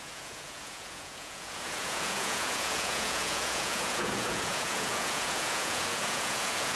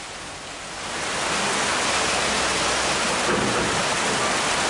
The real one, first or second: second